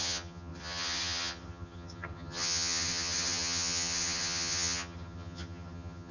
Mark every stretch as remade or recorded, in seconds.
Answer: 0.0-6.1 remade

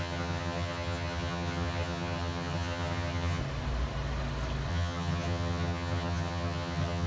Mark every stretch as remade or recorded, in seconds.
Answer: 0.0-3.4 remade; 3.4-4.7 recorded; 4.7-7.1 remade

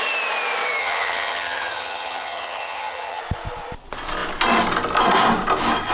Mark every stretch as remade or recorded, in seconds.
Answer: 0.0-0.8 recorded; 0.8-3.2 remade; 3.2-5.9 recorded

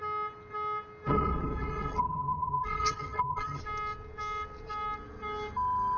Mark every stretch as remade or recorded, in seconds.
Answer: 0.0-1.1 recorded; 1.1-3.6 remade; 3.6-6.0 recorded